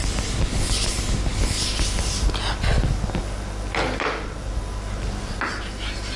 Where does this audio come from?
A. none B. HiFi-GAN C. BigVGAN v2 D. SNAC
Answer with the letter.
A